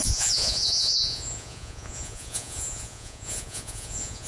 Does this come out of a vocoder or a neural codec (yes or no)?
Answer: yes